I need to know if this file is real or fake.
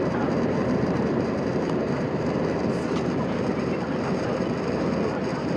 fake